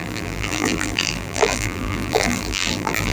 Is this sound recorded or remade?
remade